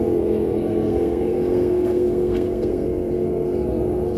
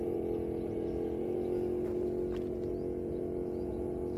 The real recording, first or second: second